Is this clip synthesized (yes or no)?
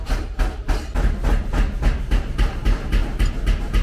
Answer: no